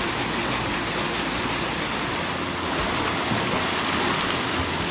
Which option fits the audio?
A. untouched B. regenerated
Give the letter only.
A